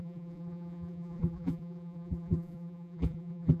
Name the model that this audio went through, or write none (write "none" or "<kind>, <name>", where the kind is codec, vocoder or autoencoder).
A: vocoder, BigVGAN v2